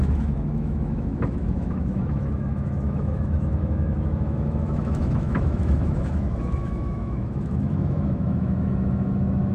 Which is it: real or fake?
fake